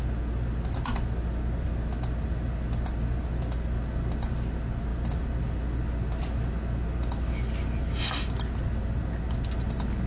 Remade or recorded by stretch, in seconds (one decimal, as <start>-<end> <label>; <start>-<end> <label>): 0.0-10.1 recorded

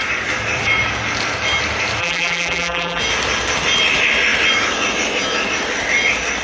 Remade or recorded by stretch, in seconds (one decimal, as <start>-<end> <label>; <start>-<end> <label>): 0.0-2.0 recorded; 2.0-3.0 remade; 3.0-6.4 recorded